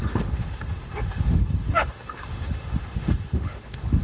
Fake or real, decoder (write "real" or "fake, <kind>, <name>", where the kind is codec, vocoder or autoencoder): fake, autoencoder, DAC-VAE